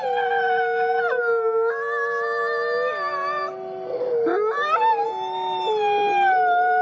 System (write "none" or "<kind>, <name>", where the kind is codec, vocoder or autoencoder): none